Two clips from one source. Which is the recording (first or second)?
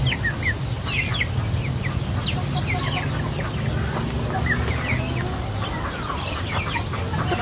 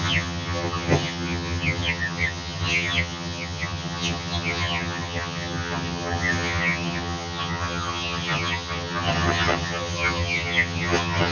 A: first